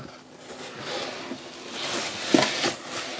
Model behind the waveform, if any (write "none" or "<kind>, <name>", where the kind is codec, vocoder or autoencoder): none